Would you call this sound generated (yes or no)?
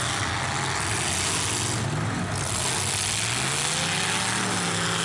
no